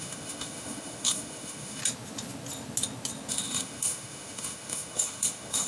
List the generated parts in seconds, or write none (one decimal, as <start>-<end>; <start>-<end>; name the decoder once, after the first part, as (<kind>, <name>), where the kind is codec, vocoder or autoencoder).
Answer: 0.0-1.8 (autoencoder, DAC-VAE); 3.3-5.7